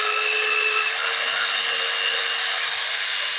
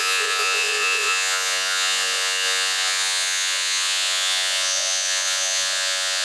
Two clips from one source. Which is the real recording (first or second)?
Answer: first